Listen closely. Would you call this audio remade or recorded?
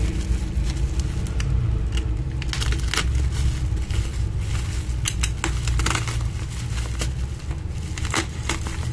recorded